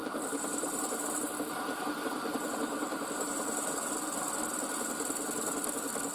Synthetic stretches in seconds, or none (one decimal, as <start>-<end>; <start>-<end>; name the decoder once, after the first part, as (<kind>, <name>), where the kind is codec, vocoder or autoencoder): 0.0-3.7 (vocoder, BigVGAN v2)